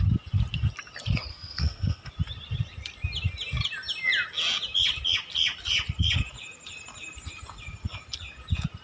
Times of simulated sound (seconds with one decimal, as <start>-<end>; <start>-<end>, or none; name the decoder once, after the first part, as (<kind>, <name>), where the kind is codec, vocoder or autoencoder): 1.3-2.1 (codec, SNAC)